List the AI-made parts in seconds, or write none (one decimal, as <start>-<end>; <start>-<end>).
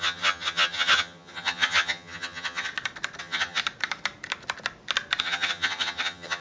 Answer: 0.0-2.7; 3.2-3.6; 5.2-6.4